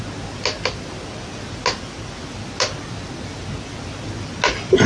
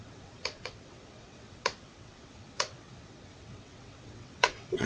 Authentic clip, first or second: first